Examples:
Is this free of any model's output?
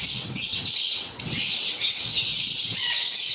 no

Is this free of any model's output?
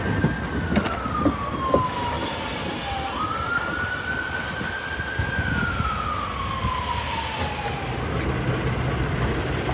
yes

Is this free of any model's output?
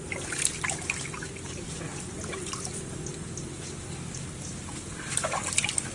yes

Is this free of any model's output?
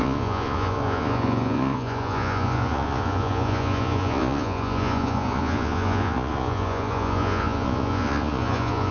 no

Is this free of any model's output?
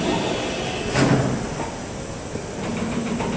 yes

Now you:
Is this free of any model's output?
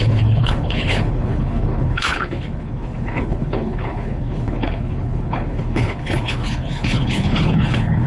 no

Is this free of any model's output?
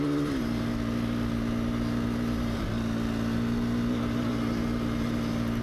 yes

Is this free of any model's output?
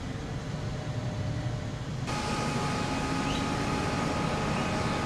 yes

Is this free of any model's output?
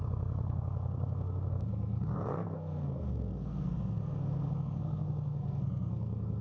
no